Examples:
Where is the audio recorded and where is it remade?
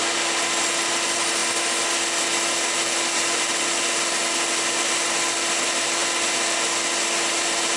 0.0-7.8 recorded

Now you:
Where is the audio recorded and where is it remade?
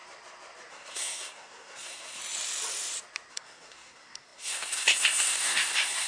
0.0-0.7 recorded; 0.7-2.2 remade; 2.2-3.3 recorded; 3.3-6.1 remade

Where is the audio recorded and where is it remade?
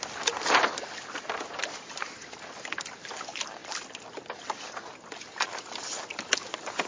0.0-6.9 recorded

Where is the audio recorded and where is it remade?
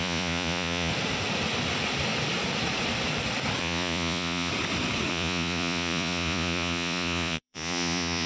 0.0-0.9 remade; 0.9-3.6 recorded; 3.6-4.5 remade; 4.5-5.1 recorded; 5.1-8.3 remade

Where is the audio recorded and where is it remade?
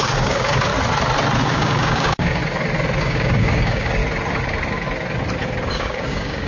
0.0-0.7 remade; 0.7-1.4 recorded; 1.4-2.4 remade; 2.4-3.0 recorded; 3.0-4.0 remade; 4.0-5.7 recorded; 5.7-6.5 remade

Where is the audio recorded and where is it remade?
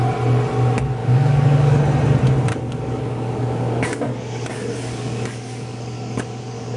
0.0-1.0 recorded; 1.0-1.8 remade; 1.8-2.5 recorded; 2.5-6.8 remade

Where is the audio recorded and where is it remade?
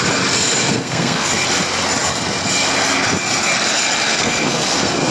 0.0-0.6 recorded; 0.6-1.3 remade; 1.3-4.1 recorded; 4.1-5.1 remade